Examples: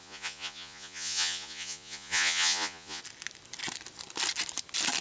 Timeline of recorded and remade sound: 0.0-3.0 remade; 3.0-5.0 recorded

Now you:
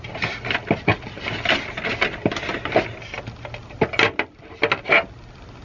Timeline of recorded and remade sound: 0.0-5.6 recorded

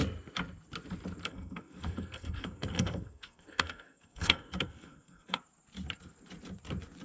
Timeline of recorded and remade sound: 0.0-1.2 recorded; 1.2-5.4 remade; 5.4-7.0 recorded

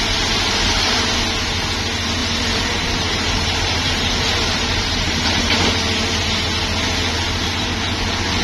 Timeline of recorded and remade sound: 0.0-2.2 recorded; 2.2-5.6 remade; 5.6-8.4 recorded

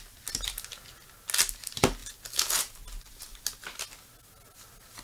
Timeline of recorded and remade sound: 0.0-5.0 recorded

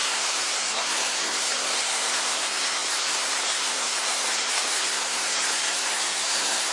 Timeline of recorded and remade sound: 0.0-6.7 remade

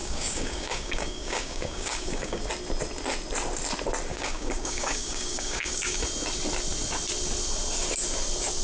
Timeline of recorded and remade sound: 0.0-2.4 remade; 2.4-4.1 recorded; 4.1-6.0 remade; 6.0-8.6 recorded